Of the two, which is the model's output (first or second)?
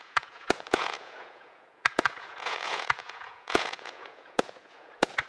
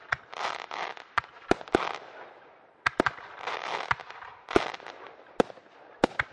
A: first